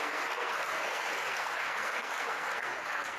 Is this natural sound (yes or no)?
no